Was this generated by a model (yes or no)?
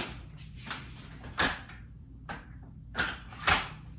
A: no